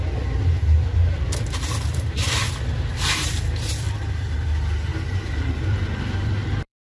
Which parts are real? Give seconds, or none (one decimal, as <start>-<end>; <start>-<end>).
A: 4.9-5.7